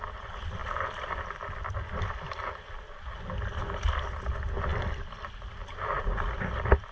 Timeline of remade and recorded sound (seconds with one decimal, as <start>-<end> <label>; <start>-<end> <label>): 0.0-6.9 recorded